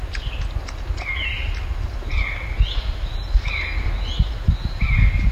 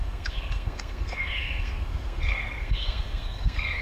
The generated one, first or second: second